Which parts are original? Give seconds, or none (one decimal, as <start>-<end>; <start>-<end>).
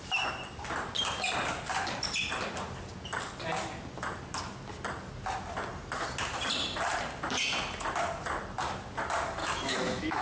0.0-9.4